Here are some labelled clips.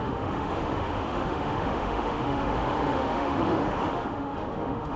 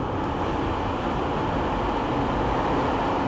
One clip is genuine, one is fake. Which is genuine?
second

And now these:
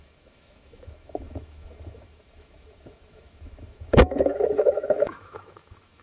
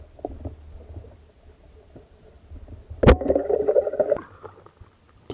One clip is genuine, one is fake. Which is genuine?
second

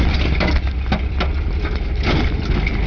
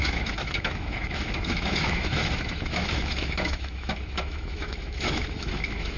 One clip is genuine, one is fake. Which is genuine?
first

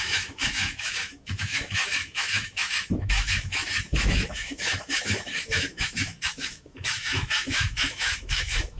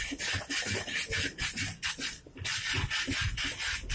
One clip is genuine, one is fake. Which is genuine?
second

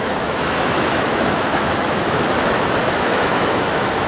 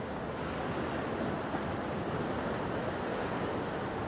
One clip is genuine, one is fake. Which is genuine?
second